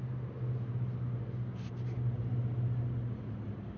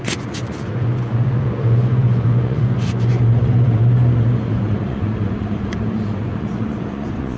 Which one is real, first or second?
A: first